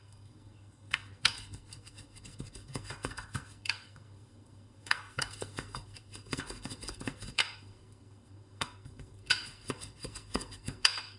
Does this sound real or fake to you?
fake